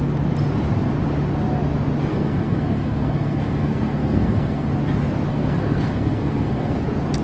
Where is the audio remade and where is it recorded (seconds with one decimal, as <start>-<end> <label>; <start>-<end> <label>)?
0.0-2.1 recorded; 2.1-4.7 remade; 4.7-5.3 recorded; 5.3-6.8 remade; 6.8-7.2 recorded